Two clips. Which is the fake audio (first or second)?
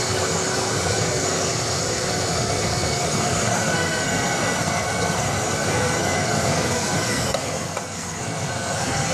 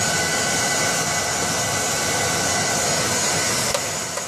first